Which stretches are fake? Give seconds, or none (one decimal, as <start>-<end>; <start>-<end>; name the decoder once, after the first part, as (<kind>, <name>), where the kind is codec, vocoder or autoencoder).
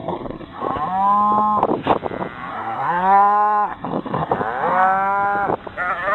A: 0.0-0.6 (codec, SNAC); 2.5-4.3